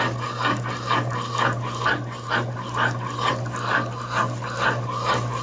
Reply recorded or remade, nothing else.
recorded